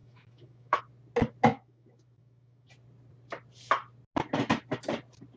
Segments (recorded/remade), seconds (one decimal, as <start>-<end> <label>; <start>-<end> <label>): 0.0-0.8 remade; 0.8-1.5 recorded; 1.5-2.7 remade; 2.7-5.4 recorded